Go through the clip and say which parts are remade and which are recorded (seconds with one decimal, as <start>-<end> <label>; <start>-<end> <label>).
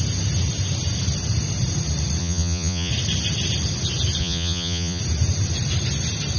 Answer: 0.0-2.2 recorded; 2.2-2.9 remade; 2.9-4.2 recorded; 4.2-5.0 remade; 5.0-6.4 recorded